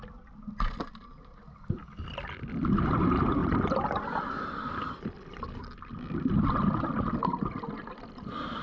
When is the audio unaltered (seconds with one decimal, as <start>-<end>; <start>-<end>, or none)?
0.0-3.4; 5.9-7.2